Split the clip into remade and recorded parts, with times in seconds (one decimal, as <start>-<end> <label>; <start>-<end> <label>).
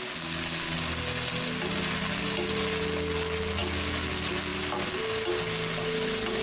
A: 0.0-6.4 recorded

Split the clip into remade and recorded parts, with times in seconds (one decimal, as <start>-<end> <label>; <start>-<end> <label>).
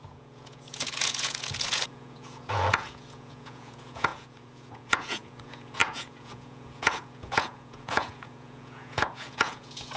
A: 0.0-10.0 remade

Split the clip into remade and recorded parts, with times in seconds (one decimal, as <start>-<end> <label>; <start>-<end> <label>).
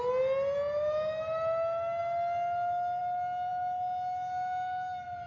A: 0.0-5.3 recorded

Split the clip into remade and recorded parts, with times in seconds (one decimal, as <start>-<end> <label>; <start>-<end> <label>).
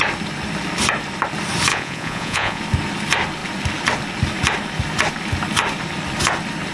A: 0.0-1.7 recorded; 1.7-2.6 remade; 2.6-6.7 recorded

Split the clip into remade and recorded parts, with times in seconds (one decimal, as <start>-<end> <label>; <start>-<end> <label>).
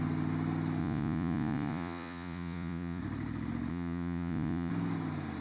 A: 0.0-0.8 recorded; 0.8-3.0 remade; 3.0-3.7 recorded; 3.7-4.7 remade; 4.7-5.4 recorded